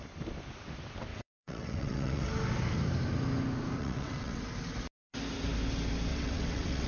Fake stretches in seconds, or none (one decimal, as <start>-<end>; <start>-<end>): 1.1-2.3; 3.8-4.4; 6.1-6.9